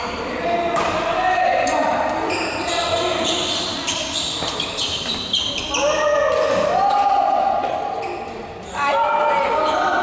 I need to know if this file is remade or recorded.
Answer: recorded